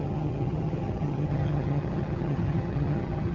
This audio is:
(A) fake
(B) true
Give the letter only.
A